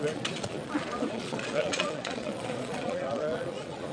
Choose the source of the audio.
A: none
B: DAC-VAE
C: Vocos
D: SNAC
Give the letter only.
C